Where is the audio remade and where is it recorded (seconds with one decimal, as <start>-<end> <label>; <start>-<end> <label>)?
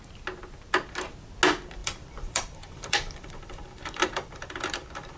0.0-1.8 recorded; 1.8-5.2 remade